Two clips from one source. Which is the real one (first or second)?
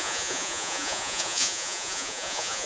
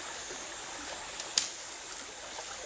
second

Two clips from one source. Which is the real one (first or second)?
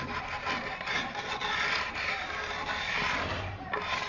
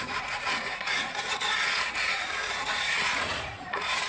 first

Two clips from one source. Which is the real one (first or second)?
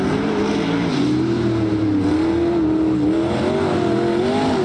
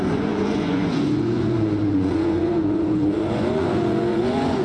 first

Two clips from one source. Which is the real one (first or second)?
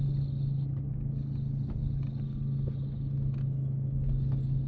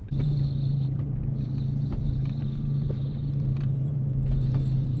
first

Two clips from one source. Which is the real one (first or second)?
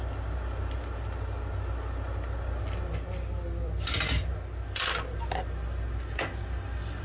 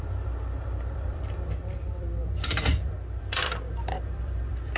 first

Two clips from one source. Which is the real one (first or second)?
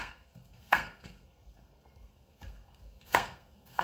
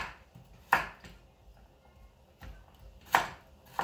second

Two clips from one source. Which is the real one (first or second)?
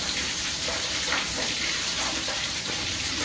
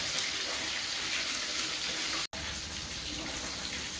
second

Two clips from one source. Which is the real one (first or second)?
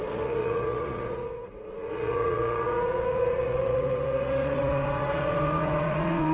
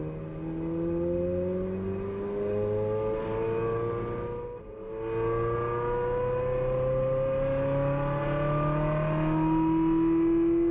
second